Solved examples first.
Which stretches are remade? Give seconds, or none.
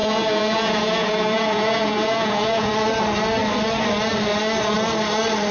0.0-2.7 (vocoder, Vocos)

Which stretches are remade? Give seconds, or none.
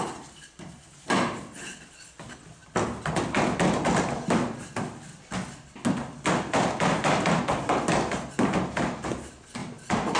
none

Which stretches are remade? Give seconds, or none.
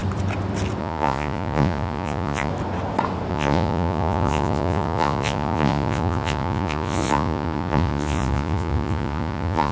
0.8-2.5 (vocoder, Vocos); 3.3-9.7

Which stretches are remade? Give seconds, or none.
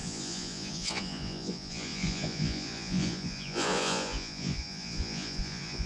0.0-5.9 (vocoder, Vocos)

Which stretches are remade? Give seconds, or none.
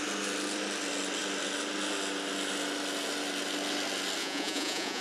4.2-5.0 (vocoder, Vocos)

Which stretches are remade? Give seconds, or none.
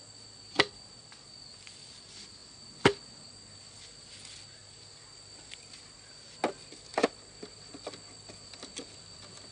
none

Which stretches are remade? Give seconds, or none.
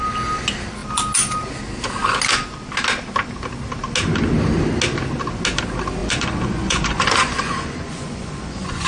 6.0-8.9 (vocoder, Vocos)